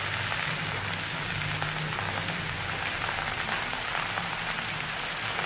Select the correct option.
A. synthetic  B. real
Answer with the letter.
B